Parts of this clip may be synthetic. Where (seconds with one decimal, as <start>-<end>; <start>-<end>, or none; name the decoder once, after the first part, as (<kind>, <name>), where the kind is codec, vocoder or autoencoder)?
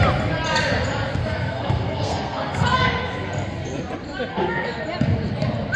1.2-3.1 (codec, SNAC); 4.3-4.8